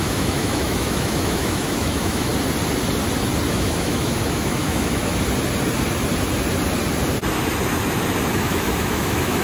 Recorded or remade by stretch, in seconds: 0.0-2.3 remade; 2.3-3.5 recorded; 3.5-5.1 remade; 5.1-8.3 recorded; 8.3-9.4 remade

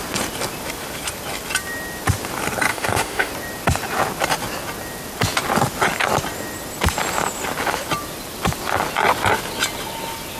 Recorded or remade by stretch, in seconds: 0.0-2.7 recorded; 2.7-3.3 remade; 3.3-10.4 recorded

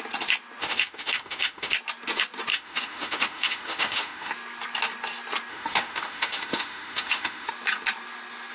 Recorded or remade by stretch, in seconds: 0.0-0.6 recorded; 0.6-1.7 remade; 1.7-2.5 recorded; 2.5-4.3 remade; 4.3-5.5 recorded; 5.5-7.5 remade; 7.5-8.5 recorded

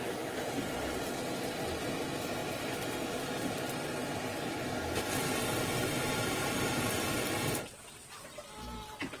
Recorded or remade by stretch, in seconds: 0.0-9.2 recorded

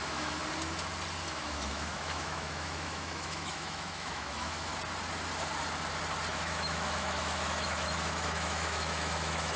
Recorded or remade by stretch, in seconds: 0.0-0.4 remade; 0.4-1.3 recorded; 1.3-4.7 remade; 4.7-6.3 recorded; 6.3-9.6 remade